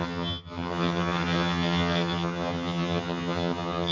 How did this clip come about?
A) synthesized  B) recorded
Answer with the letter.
A